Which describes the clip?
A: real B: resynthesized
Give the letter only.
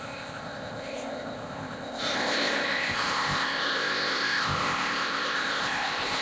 B